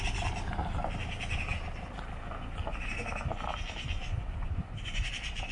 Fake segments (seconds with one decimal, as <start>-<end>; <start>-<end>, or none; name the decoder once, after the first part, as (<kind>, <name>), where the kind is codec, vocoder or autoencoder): 4.0-5.1 (vocoder, Vocos)